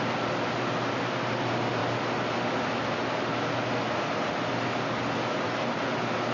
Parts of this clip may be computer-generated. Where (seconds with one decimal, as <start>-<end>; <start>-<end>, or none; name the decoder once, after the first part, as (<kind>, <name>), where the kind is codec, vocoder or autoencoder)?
none